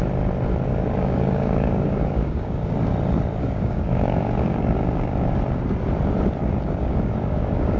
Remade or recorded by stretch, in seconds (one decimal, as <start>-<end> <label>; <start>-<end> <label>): 0.0-0.7 recorded; 0.7-2.9 remade; 2.9-3.4 recorded; 3.4-5.4 remade; 5.4-6.4 recorded; 6.4-7.8 remade